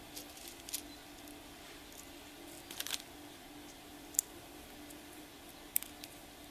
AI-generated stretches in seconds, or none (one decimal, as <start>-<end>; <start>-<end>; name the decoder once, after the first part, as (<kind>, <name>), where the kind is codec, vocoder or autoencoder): 3.9-5.3 (vocoder, BigVGAN v2)